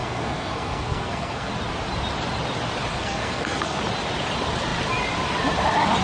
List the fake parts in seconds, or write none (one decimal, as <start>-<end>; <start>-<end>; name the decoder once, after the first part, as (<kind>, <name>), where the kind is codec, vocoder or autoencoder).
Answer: 0.0-1.5 (codec, SNAC); 2.9-3.8